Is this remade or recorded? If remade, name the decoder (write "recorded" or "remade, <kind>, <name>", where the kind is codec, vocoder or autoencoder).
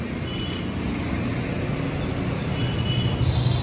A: recorded